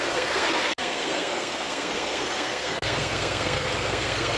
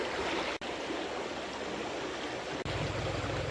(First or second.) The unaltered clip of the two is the second